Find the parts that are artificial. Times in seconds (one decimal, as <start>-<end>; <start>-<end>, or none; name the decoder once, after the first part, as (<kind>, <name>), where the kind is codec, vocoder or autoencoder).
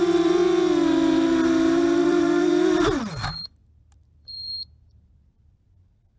0.0-0.4 (vocoder, BigVGAN v2); 2.0-6.2